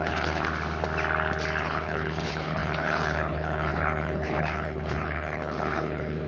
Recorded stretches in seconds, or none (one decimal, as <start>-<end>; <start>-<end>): 0.5-1.6